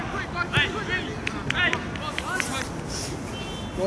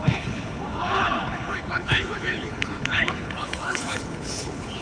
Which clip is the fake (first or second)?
second